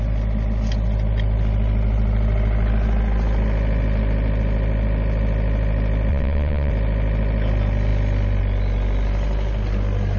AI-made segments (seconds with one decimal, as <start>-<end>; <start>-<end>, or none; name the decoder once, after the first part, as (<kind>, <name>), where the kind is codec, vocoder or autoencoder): 6.1-6.7 (vocoder, WaveNeXt)